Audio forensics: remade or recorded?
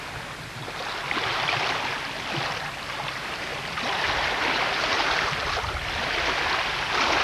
recorded